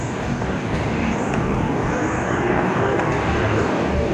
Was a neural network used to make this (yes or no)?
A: yes